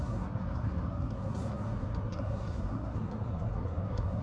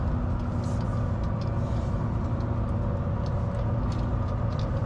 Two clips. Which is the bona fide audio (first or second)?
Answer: second